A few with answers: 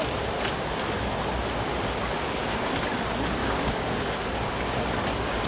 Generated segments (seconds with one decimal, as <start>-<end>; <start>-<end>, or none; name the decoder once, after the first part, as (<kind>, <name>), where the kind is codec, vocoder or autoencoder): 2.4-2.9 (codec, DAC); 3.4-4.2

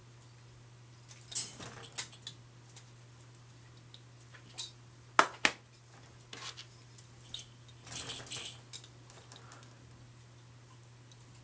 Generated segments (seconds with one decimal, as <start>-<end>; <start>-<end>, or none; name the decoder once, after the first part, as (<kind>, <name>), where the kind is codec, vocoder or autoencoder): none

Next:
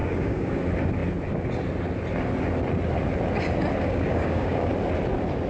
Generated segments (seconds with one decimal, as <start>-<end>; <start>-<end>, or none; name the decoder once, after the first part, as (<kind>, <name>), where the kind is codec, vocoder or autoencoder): 0.0-0.6 (codec, DAC); 3.8-4.7